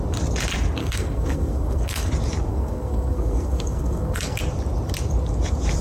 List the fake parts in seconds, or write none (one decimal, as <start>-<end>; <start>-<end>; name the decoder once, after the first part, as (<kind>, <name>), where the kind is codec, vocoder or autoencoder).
0.8-2.1 (codec, SNAC); 2.5-4.4